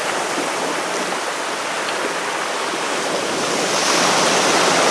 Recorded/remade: recorded